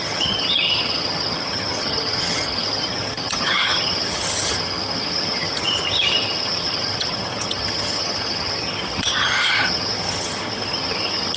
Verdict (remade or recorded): remade